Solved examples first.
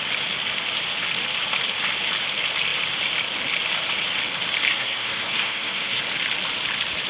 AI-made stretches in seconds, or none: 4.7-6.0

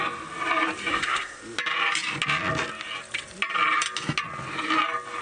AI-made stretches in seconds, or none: 0.9-1.4

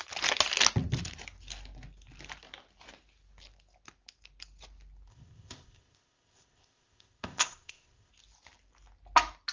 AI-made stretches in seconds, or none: 5.1-8.1

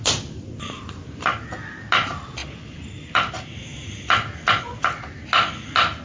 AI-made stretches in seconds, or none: 1.3-1.8; 2.4-3.3; 3.7-4.6

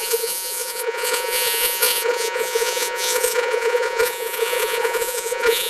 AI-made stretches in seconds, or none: 0.0-5.7

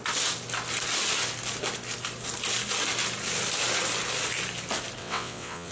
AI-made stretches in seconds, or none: 5.0-5.7

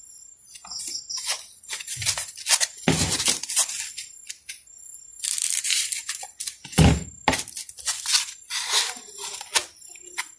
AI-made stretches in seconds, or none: none

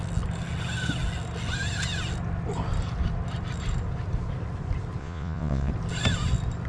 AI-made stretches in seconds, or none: 5.0-5.7